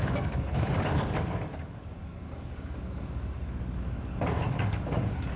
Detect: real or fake fake